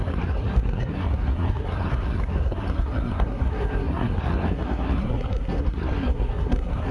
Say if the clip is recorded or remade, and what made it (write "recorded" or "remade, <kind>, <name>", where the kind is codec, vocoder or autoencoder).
remade, codec, SNAC